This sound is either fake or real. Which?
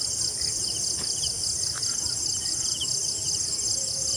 real